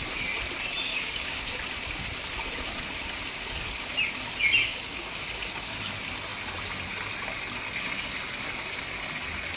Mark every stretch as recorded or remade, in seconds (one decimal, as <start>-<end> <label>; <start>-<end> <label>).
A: 0.0-0.9 recorded; 0.9-1.4 remade; 1.4-4.6 recorded; 4.6-5.1 remade; 5.1-9.6 recorded